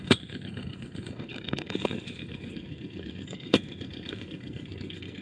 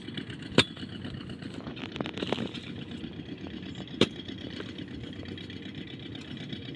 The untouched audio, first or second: second